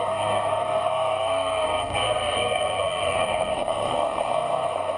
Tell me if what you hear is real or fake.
fake